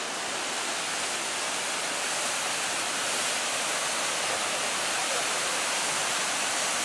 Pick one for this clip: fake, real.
real